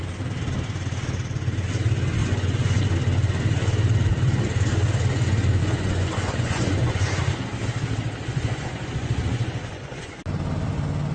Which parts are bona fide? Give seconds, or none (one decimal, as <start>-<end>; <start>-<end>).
0.0-2.2; 2.8-5.6; 7.2-8.3; 10.2-11.1